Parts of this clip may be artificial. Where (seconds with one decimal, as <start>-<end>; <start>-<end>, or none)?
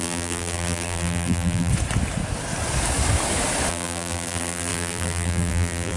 0.0-1.7; 3.7-6.0